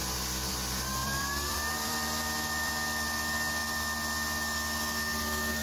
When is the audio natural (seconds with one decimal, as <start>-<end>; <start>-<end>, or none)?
0.0-1.0; 2.7-5.6

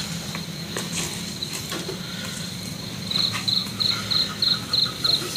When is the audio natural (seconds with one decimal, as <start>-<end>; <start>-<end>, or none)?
0.0-5.4

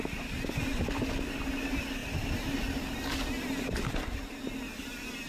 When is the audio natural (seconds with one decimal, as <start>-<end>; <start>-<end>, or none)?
0.0-5.3

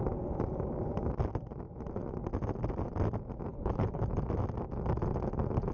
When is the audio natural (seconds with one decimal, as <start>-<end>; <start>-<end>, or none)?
0.0-3.5; 4.0-5.7

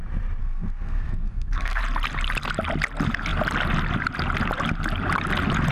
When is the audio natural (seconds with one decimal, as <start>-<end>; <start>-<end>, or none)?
0.0-0.4; 1.8-5.7

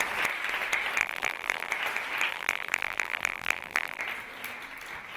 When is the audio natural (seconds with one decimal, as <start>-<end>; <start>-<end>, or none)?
0.0-1.0; 1.7-2.3; 4.0-5.2

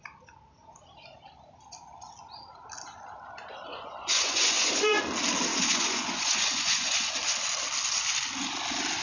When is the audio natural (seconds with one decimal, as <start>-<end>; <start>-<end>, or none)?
0.0-3.7; 5.0-5.5; 7.1-9.0

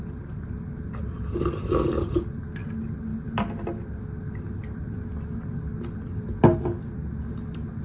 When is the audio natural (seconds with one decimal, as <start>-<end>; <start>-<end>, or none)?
0.0-7.8